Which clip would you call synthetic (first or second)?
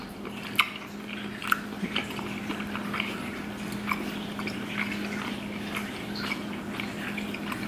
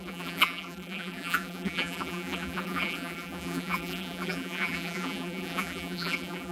second